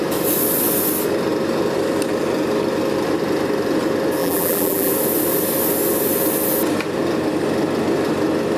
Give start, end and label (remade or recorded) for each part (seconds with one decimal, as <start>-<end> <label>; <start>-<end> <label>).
0.0-4.2 recorded; 4.2-4.9 remade; 4.9-8.6 recorded